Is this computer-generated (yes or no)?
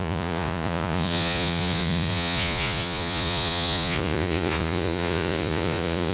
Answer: yes